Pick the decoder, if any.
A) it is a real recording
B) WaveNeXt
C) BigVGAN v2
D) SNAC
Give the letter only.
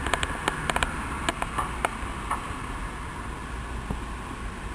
A